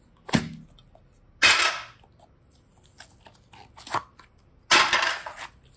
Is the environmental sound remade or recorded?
recorded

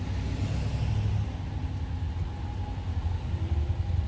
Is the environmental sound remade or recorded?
recorded